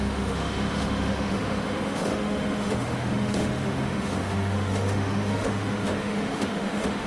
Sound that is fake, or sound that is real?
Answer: fake